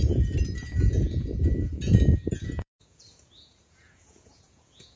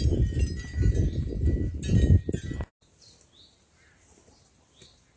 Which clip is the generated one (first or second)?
first